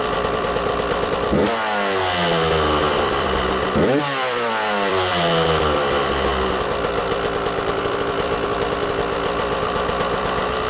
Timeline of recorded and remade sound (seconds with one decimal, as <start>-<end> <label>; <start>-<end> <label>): 0.0-1.4 remade; 1.4-2.9 recorded; 2.9-6.3 remade; 6.3-7.8 recorded; 7.8-10.7 remade